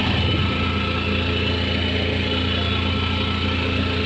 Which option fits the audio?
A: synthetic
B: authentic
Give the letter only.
B